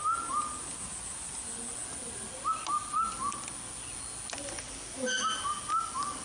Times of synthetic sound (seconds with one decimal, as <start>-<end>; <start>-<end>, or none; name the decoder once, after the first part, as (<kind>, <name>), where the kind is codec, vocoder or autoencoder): none